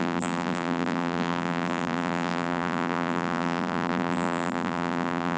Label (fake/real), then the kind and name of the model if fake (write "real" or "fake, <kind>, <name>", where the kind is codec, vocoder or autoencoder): fake, vocoder, BigVGAN v2